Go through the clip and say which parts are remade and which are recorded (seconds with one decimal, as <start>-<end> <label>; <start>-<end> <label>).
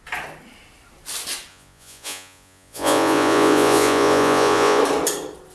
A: 0.0-1.5 recorded; 1.5-4.8 remade; 4.8-5.5 recorded